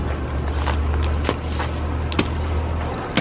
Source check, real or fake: real